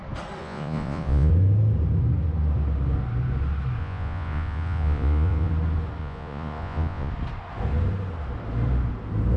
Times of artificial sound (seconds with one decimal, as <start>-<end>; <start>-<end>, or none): 0.4-1.3; 3.8-5.5; 6.0-7.1